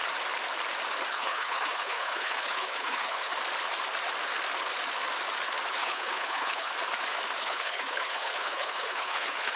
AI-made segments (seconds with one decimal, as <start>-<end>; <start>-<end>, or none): 1.1-3.3; 5.7-6.7; 7.4-9.6